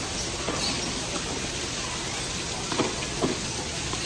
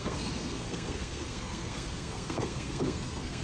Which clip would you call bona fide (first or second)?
first